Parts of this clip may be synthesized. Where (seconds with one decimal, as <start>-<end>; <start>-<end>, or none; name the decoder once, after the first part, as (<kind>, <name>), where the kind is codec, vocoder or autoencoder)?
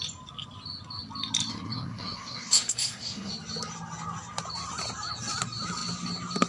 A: 1.5-3.3 (codec, SNAC)